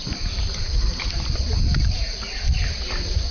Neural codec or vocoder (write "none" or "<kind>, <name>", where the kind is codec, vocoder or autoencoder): vocoder, BigVGAN v2